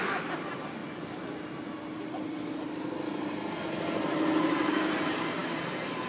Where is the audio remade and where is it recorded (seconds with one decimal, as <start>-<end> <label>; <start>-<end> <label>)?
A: 0.0-6.1 recorded